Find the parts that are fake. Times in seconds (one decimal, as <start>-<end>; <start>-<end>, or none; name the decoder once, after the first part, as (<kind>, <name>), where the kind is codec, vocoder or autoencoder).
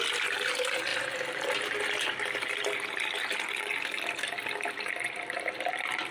none